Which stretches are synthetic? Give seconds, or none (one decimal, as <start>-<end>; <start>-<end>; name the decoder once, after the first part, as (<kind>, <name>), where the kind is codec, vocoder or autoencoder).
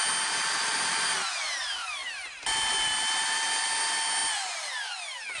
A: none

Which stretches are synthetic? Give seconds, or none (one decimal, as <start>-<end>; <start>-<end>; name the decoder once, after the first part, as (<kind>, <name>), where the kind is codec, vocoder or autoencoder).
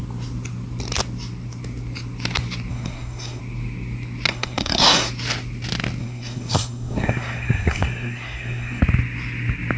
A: 2.7-3.4 (codec, SNAC); 4.3-5.1; 6.0-8.8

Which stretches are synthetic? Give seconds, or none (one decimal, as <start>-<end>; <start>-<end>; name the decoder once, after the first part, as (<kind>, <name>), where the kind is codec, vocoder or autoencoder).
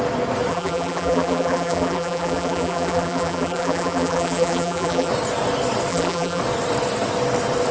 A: 0.5-5.1 (vocoder, BigVGAN v2); 5.9-6.4